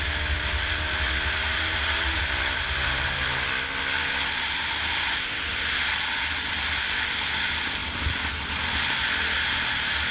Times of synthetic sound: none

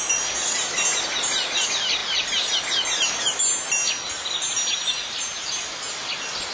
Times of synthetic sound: 4.9-5.6 (vocoder, BigVGAN v2)

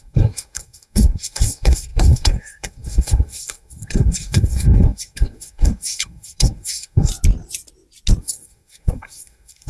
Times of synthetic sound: 0.0-7.1 (codec, SNAC); 8.2-9.7

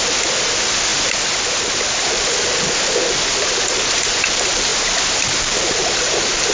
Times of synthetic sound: none

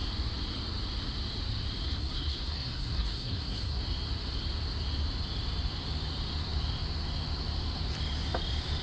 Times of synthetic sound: 1.8-3.8 (codec, SNAC)